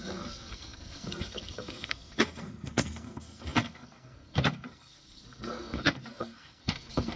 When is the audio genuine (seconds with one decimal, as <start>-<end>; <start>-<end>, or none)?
none